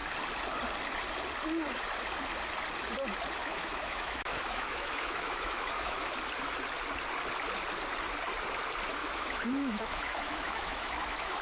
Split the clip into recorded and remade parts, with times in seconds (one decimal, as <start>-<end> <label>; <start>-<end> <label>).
0.0-3.4 recorded; 3.4-6.1 remade; 6.1-9.0 recorded; 9.0-11.4 remade